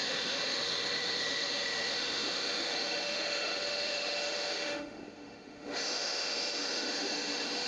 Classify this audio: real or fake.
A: fake